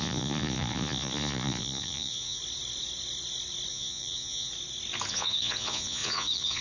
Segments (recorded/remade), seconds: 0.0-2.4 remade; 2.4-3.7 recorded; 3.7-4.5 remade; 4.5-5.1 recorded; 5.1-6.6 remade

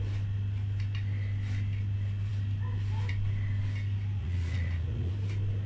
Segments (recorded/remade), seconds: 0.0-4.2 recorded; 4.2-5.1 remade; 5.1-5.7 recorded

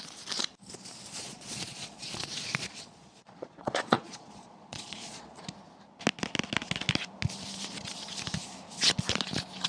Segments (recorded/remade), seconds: 0.0-1.2 recorded; 1.2-5.4 remade; 5.4-9.7 recorded

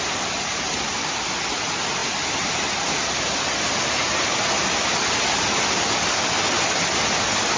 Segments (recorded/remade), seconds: 0.0-7.6 recorded

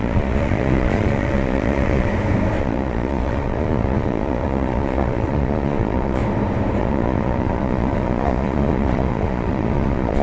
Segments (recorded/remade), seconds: 0.0-2.1 remade; 2.1-2.6 recorded; 2.6-6.2 remade; 6.2-6.8 recorded; 6.8-10.2 remade

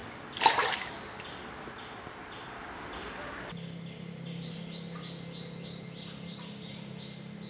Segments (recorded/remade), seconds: 0.0-7.5 recorded

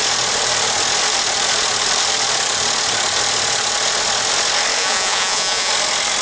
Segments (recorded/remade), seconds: 0.0-4.8 recorded; 4.8-5.7 remade; 5.7-6.2 recorded